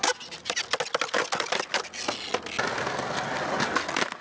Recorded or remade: recorded